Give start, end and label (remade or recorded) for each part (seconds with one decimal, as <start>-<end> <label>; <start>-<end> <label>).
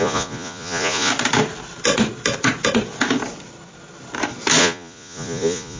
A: 0.0-1.1 remade; 1.1-4.6 recorded; 4.6-5.8 remade